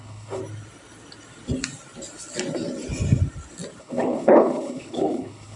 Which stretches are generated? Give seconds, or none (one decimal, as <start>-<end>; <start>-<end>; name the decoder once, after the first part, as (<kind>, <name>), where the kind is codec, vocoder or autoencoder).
0.0-0.4 (codec, HILCodec); 3.8-5.6